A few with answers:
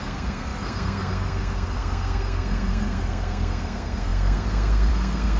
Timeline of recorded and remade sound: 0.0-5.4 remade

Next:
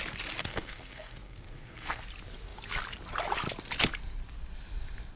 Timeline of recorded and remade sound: 0.0-0.4 recorded; 0.4-2.0 remade; 2.0-5.2 recorded

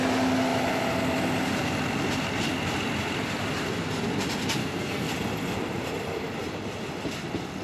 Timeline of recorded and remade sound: 0.0-4.6 recorded; 4.6-5.1 remade; 5.1-7.6 recorded